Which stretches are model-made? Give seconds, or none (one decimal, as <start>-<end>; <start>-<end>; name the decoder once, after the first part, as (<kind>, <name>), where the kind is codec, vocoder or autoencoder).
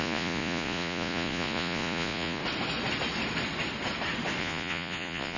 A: 0.0-2.4 (vocoder, Vocos); 4.4-5.4